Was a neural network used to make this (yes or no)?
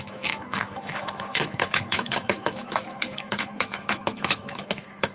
yes